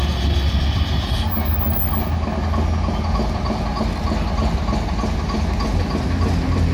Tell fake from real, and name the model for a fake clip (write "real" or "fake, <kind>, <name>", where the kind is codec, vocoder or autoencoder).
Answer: real